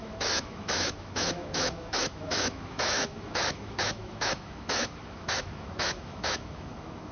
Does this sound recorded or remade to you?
remade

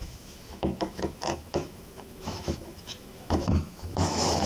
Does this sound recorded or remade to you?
remade